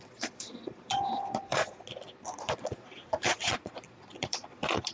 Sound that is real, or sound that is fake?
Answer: fake